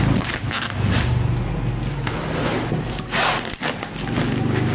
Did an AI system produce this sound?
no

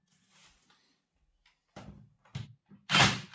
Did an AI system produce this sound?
no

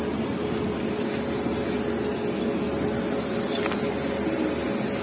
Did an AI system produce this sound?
no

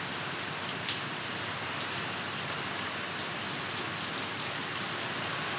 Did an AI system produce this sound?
no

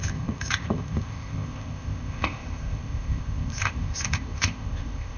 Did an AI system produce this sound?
yes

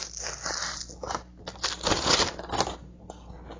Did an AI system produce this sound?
no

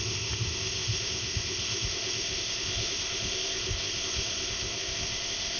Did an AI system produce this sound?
yes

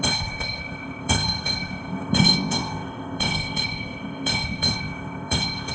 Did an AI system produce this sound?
yes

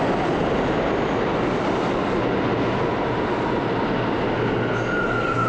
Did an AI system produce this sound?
no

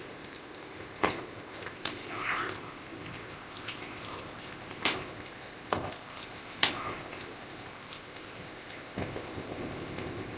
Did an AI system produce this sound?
yes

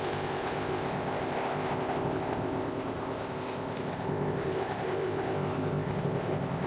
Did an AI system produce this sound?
yes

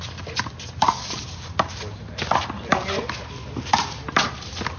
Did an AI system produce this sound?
no